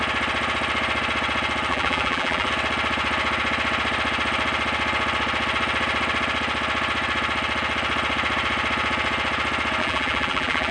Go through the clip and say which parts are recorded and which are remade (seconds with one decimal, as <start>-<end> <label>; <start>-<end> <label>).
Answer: 0.0-1.7 recorded; 1.7-2.5 remade; 2.5-9.8 recorded; 9.8-10.7 remade